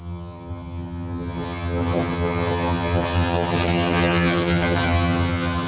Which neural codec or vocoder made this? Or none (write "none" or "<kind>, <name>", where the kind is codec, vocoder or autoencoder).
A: vocoder, HiFi-GAN